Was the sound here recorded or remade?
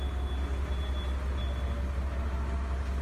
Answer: recorded